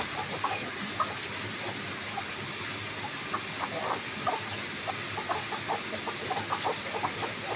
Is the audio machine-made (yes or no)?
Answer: no